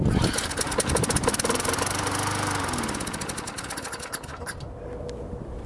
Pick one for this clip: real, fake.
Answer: real